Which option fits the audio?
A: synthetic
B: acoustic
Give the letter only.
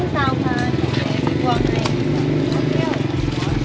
B